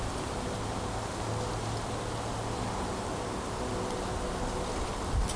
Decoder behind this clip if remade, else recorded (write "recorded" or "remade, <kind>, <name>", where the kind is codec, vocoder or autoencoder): recorded